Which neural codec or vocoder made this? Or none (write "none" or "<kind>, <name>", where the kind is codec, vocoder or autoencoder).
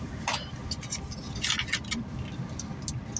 none